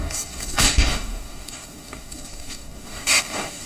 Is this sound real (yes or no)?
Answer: no